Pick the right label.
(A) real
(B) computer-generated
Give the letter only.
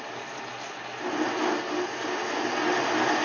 A